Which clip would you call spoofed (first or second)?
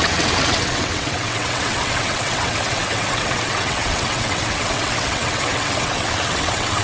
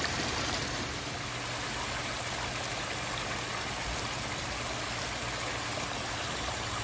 first